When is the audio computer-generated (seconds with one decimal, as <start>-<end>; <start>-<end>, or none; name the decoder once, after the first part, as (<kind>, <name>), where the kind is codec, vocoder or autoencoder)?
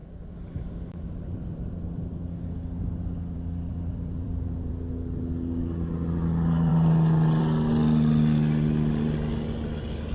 0.0-1.7 (vocoder, BigVGAN v2); 3.2-4.7